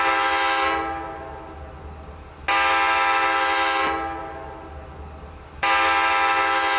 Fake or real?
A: real